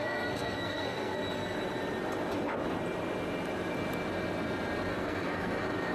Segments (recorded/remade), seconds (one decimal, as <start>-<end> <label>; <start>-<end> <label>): 0.0-1.4 remade; 1.4-4.9 recorded; 4.9-5.9 remade